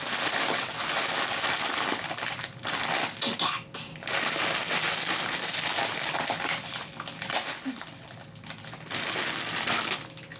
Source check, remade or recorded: recorded